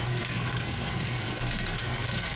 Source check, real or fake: fake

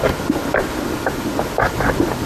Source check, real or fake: real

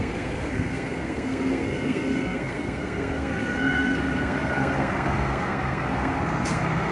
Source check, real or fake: fake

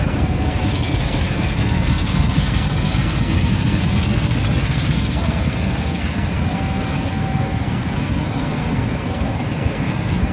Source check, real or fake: fake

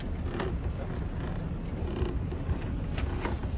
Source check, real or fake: real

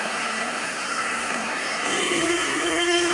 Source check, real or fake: fake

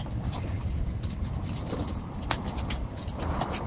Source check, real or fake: real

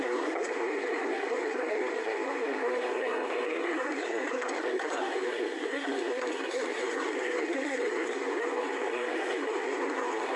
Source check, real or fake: fake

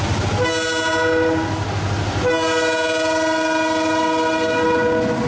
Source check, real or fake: real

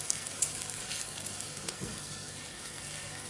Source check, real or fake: fake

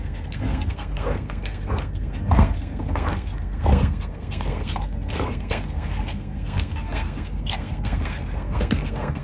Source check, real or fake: fake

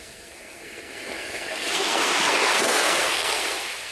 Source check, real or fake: fake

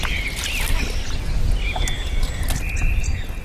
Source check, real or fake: real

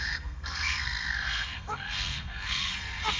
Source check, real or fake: fake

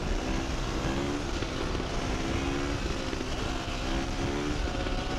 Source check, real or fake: real